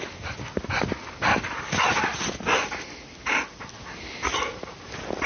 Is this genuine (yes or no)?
yes